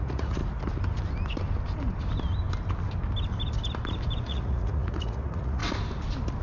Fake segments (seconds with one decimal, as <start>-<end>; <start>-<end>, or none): 0.0-0.4; 4.2-5.6